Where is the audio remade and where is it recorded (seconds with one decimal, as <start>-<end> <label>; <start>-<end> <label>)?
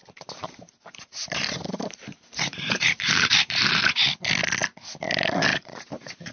0.0-3.8 remade; 3.8-5.5 recorded; 5.5-6.3 remade